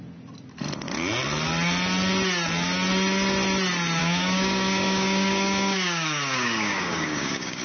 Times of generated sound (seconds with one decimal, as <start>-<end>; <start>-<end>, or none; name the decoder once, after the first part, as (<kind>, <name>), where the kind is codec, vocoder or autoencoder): 4.0-7.6 (codec, DAC)